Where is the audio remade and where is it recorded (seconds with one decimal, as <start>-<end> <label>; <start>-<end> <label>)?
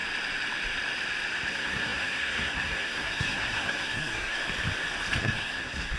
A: 0.0-1.5 recorded; 1.5-4.4 remade; 4.4-5.2 recorded; 5.2-6.0 remade